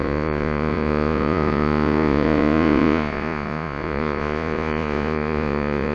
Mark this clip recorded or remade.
remade